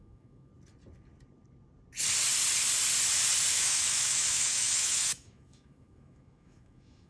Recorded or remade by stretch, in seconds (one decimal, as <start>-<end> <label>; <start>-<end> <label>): 0.0-0.5 remade; 0.5-3.5 recorded; 3.5-7.1 remade